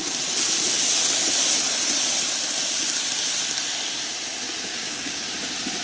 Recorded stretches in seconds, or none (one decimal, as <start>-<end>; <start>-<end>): 0.0-4.7; 5.3-5.8